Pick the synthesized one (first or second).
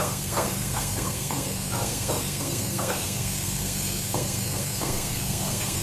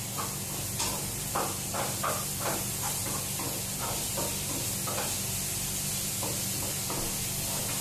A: first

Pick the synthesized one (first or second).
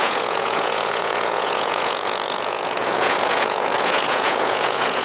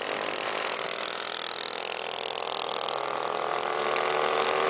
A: first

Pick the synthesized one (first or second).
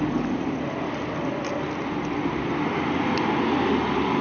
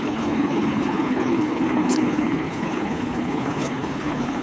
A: second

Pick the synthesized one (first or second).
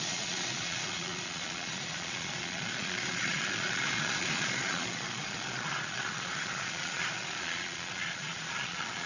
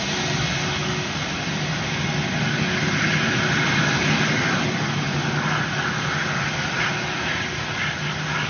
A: first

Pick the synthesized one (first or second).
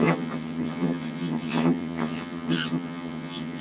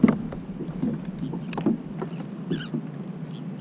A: first